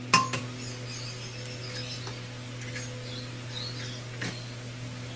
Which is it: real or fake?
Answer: real